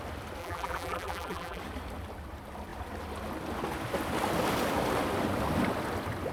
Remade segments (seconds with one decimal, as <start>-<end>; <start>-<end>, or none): 0.4-1.6